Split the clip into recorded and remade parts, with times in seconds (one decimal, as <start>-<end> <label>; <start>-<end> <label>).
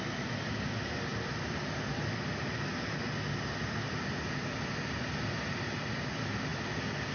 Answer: 0.0-7.1 recorded